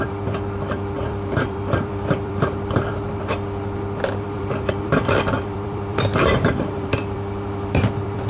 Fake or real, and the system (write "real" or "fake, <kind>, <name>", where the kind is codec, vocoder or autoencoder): fake, vocoder, BigVGAN v2